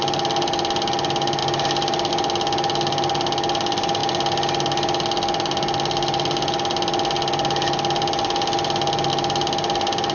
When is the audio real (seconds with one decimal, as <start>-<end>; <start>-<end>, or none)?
0.0-10.1